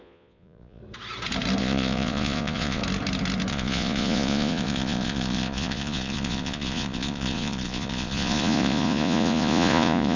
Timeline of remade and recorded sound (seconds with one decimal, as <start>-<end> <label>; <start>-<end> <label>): 0.0-0.8 remade; 0.8-1.6 recorded; 1.6-2.8 remade; 2.8-3.5 recorded; 3.5-10.2 remade